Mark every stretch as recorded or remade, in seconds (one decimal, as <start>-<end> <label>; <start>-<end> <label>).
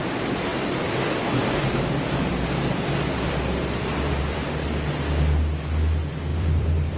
0.0-0.5 recorded; 0.5-4.5 remade; 4.5-6.3 recorded; 6.3-7.0 remade